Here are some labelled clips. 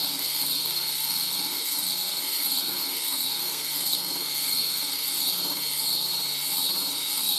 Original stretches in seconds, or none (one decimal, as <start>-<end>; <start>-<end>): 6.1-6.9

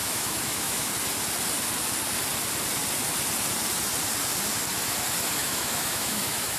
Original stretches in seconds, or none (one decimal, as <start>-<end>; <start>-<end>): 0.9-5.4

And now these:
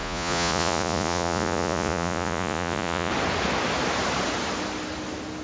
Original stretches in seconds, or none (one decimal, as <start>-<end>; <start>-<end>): 3.1-5.4

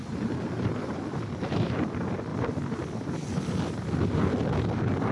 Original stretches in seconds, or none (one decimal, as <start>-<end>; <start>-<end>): 0.0-2.3; 3.3-5.1

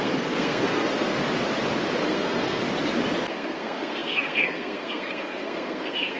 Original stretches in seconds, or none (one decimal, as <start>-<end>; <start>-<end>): 1.1-2.0; 2.6-3.3

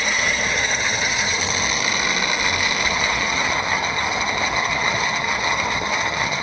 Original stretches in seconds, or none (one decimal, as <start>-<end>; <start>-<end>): 1.4-2.9

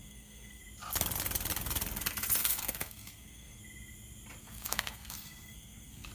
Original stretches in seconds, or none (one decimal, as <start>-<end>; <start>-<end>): 0.6-2.4; 3.6-4.4

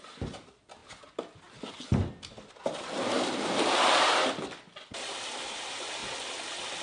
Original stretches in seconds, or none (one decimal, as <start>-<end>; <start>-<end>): 0.0-6.8